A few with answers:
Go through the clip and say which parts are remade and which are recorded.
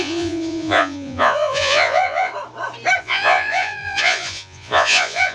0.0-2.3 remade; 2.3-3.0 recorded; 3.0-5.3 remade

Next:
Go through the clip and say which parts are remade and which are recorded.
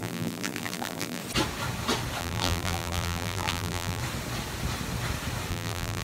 0.0-1.2 remade; 1.2-2.2 recorded; 2.2-4.0 remade; 4.0-5.5 recorded; 5.5-6.0 remade